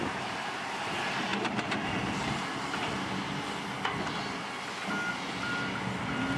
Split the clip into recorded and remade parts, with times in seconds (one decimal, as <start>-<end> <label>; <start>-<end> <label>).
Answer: 0.0-6.4 recorded